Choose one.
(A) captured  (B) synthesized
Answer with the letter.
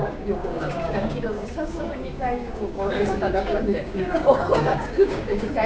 B